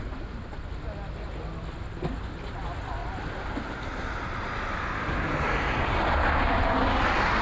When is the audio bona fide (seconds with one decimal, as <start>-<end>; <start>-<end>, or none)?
0.0-7.4